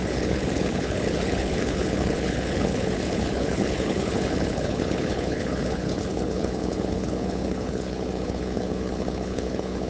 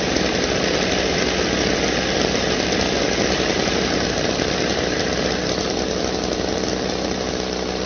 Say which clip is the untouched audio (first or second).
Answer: second